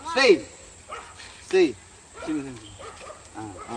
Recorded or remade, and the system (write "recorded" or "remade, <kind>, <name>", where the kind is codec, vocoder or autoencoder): recorded